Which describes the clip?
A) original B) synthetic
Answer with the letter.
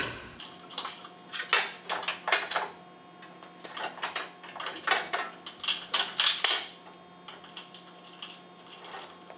A